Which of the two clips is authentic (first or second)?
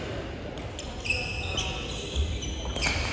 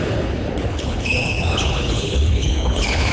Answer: first